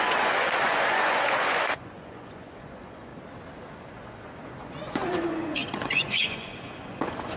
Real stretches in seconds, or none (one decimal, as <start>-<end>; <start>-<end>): 3.1-3.7